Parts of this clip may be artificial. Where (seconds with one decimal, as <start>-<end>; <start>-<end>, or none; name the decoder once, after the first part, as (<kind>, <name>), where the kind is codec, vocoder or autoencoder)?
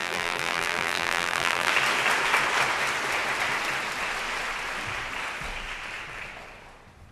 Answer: 0.0-1.7 (vocoder, BigVGAN v2)